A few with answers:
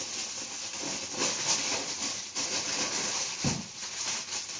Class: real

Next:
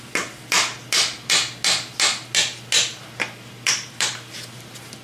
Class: real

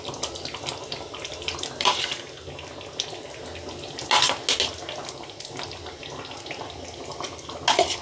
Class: real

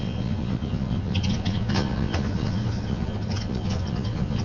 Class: fake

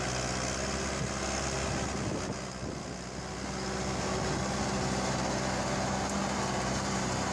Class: real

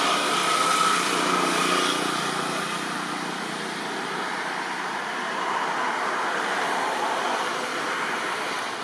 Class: real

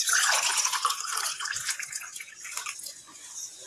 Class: fake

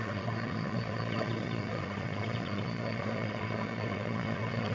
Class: fake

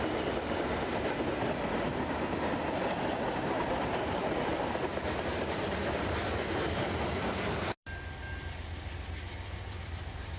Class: real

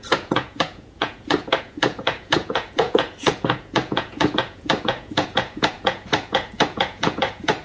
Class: fake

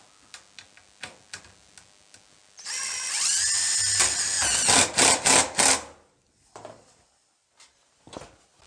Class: real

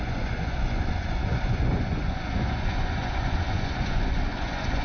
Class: fake